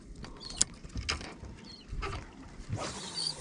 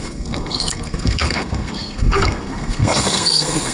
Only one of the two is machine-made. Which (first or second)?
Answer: second